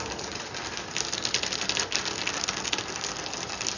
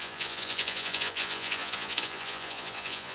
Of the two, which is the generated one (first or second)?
second